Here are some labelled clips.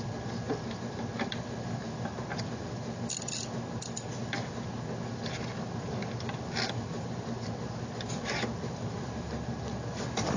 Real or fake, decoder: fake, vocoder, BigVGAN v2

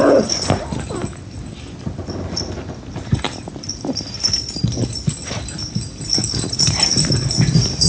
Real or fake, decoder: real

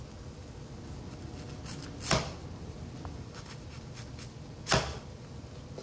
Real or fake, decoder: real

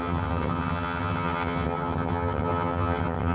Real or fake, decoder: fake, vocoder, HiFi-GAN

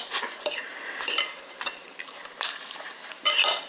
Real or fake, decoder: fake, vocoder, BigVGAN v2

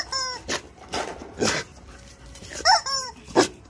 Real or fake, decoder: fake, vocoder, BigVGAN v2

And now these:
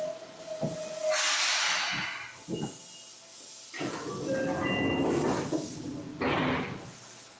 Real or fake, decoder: real